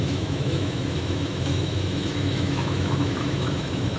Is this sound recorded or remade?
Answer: remade